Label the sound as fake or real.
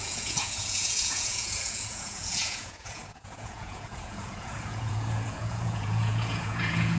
fake